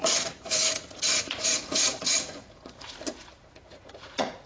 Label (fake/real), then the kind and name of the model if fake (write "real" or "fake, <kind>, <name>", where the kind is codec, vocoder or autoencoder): fake, vocoder, Vocos